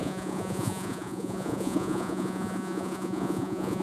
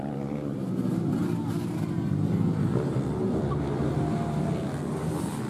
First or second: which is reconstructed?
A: first